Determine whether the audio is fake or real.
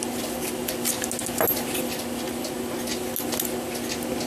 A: real